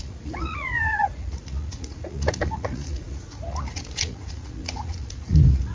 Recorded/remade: remade